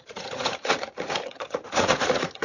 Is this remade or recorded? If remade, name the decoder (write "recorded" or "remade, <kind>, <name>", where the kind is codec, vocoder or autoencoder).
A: remade, vocoder, Vocos